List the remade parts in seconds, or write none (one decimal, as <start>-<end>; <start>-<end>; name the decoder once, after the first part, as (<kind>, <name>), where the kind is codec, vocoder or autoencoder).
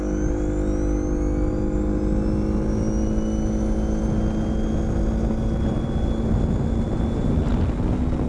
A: none